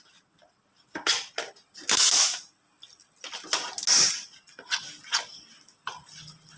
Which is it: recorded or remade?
recorded